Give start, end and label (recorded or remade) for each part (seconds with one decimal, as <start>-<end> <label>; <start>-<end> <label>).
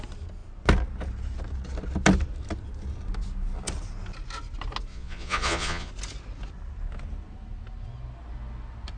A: 0.0-4.9 recorded; 4.9-5.9 remade; 5.9-9.0 recorded